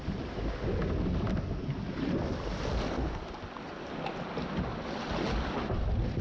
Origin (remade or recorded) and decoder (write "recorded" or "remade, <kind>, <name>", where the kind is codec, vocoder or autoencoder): recorded